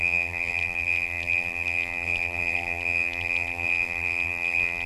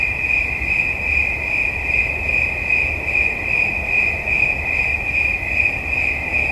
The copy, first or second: first